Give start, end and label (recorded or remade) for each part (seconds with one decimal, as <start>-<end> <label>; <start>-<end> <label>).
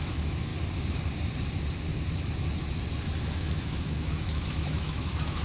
0.0-0.5 remade; 0.5-3.2 recorded; 3.2-5.4 remade